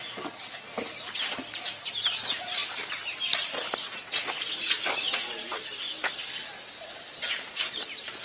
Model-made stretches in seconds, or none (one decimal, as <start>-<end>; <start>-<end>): none